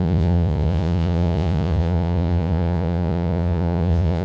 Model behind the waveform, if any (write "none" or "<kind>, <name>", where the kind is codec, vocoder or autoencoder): vocoder, Vocos